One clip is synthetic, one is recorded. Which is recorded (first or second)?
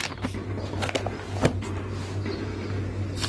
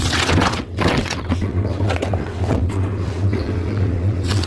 first